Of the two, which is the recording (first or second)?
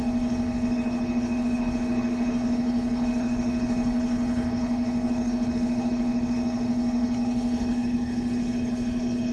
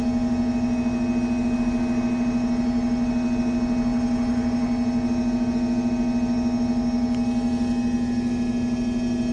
second